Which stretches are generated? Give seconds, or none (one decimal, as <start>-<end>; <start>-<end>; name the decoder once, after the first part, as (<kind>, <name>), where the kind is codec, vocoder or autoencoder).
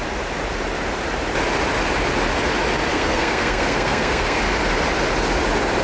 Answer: 2.9-4.4 (codec, SNAC)